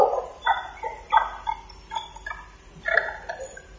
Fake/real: real